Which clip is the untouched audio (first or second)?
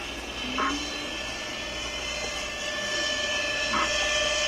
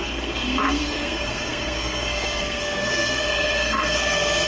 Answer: first